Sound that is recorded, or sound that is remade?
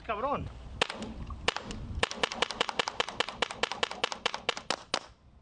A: recorded